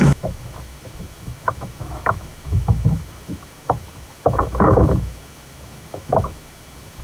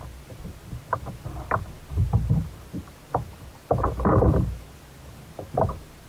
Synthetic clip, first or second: first